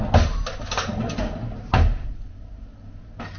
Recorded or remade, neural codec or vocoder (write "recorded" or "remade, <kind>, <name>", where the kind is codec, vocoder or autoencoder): recorded